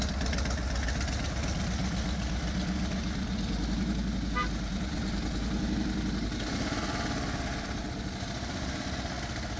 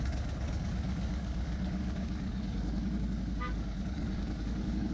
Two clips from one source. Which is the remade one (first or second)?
second